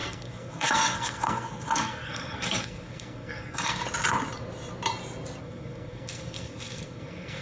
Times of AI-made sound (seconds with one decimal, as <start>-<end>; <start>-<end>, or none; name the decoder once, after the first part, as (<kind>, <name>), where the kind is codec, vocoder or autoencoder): 0.0-3.8 (codec, SNAC); 5.4-7.4